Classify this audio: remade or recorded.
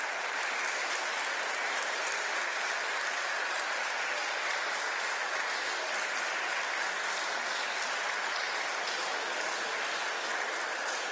recorded